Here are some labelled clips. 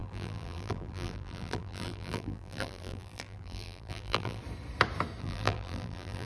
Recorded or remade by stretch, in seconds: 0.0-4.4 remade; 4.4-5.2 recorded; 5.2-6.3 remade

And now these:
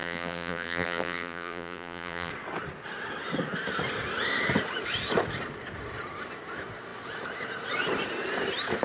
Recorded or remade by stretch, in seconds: 0.0-2.3 remade; 2.3-8.8 recorded

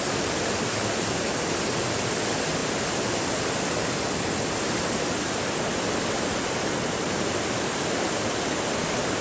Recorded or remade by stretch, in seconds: 0.0-9.2 recorded

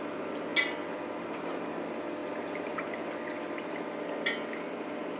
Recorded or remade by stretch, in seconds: 0.0-5.2 recorded